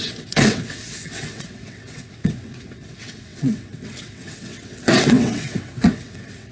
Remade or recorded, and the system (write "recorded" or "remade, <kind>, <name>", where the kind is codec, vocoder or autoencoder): remade, vocoder, WaveNeXt